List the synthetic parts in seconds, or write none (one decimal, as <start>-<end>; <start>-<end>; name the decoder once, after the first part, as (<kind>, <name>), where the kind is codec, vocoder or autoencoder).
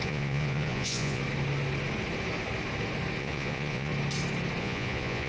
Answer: 0.0-1.2 (vocoder, Vocos); 3.2-3.9; 4.6-5.3